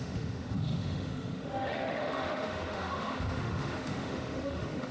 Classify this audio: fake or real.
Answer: fake